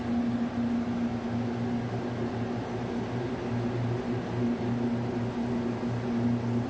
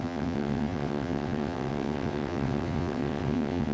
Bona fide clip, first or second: first